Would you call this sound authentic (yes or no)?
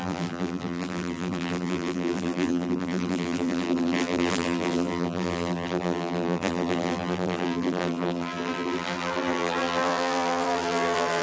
no